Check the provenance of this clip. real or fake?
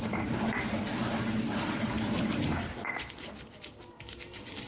real